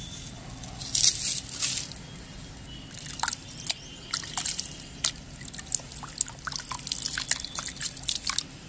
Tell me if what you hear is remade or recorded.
recorded